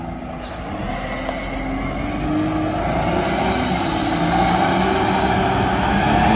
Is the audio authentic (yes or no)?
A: yes